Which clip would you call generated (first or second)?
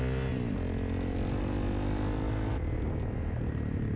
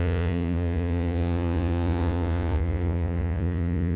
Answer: second